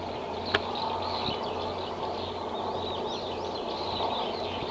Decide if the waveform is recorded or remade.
recorded